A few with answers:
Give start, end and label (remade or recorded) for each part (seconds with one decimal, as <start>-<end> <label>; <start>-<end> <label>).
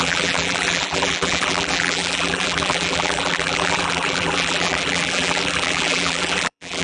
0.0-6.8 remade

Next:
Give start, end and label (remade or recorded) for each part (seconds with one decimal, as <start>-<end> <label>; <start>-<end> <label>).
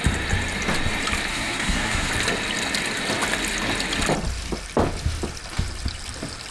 0.0-1.3 recorded; 1.3-2.1 remade; 2.1-6.5 recorded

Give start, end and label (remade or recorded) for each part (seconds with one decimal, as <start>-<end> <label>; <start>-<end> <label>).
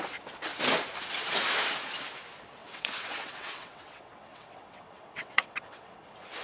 0.0-2.6 recorded; 2.6-5.9 remade; 5.9-6.4 recorded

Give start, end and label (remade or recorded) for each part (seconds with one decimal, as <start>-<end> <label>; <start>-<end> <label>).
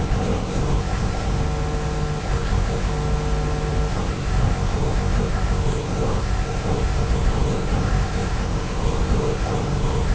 0.0-1.4 remade; 1.4-2.2 recorded; 2.2-2.9 remade; 2.9-3.9 recorded; 3.9-10.1 remade